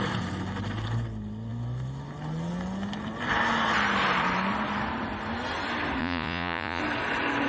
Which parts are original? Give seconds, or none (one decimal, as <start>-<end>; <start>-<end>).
0.0-6.0; 6.8-7.5